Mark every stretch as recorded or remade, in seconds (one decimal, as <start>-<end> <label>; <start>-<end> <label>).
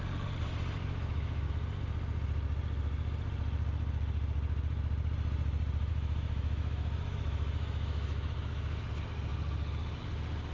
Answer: 0.0-0.8 recorded; 0.8-1.5 remade; 1.5-5.9 recorded; 5.9-8.9 remade; 8.9-10.5 recorded